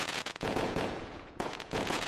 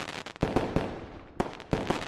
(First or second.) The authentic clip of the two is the second